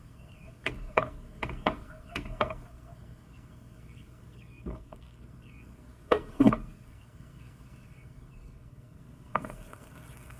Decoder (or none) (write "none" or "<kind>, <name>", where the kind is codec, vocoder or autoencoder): codec, SNAC